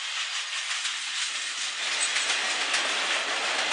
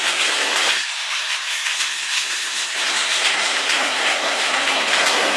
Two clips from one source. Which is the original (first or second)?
first